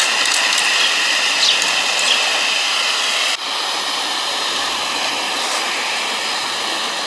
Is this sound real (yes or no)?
yes